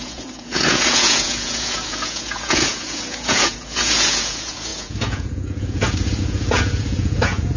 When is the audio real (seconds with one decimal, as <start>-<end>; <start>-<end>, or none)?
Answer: none